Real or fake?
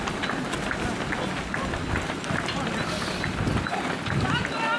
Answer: real